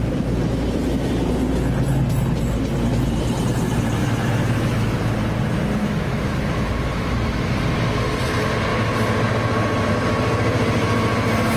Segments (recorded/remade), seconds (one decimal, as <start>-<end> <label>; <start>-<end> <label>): 0.0-4.0 recorded; 4.0-5.0 remade; 5.0-5.8 recorded; 5.8-7.5 remade; 7.5-11.6 recorded